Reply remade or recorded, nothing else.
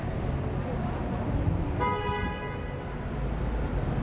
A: recorded